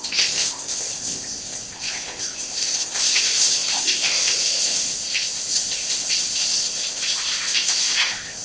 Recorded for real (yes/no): no